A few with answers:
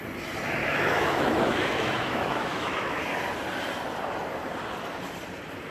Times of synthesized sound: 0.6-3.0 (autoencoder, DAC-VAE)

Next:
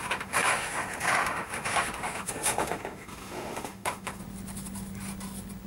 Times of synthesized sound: 0.0-4.2 (autoencoder, DAC-VAE)

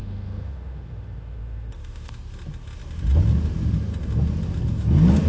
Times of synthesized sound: 0.0-2.1 (autoencoder, DAC-VAE)

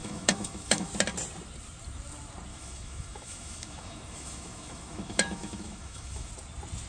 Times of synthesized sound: 0.0-0.9 (autoencoder, DAC-VAE); 2.5-6.3

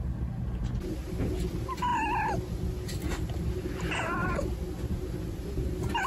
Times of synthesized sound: none